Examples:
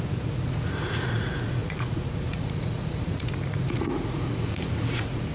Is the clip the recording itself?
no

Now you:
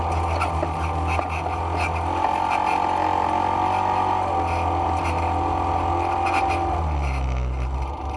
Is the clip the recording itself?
yes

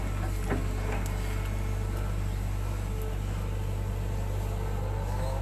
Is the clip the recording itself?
yes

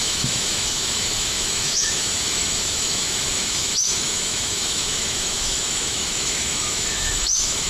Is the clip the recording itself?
no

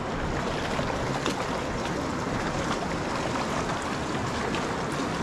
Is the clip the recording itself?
yes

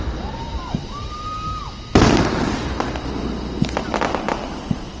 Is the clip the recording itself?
yes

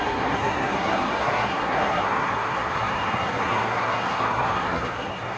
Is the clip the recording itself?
no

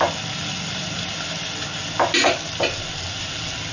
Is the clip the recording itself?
yes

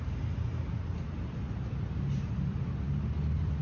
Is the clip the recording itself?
yes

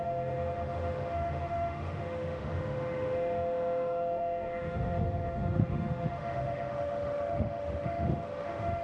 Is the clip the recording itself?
no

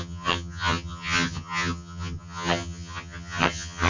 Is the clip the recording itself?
no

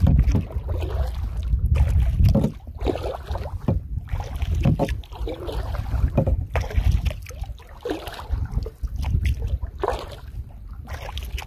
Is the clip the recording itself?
yes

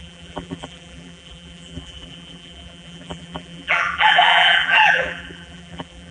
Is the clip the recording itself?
no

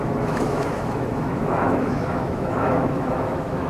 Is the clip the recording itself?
no